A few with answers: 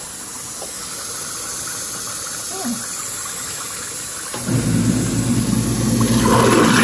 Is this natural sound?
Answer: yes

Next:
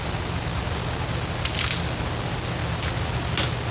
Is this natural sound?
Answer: yes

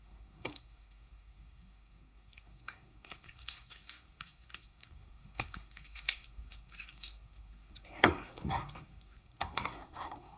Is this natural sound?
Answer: no